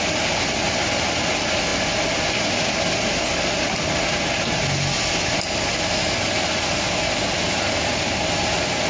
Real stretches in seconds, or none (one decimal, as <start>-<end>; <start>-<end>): 0.0-8.9